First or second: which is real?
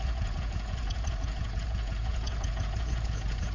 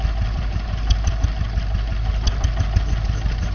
second